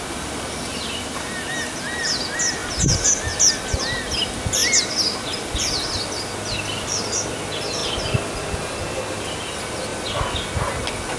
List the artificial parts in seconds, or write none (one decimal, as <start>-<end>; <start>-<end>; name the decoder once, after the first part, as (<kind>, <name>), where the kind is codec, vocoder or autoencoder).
2.6-3.2 (vocoder, BigVGAN v2); 7.8-9.0